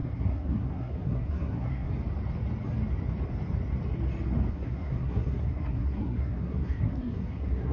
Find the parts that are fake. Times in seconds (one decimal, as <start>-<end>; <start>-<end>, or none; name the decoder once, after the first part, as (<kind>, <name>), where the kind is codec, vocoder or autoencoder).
0.0-1.9 (codec, SNAC); 4.5-7.7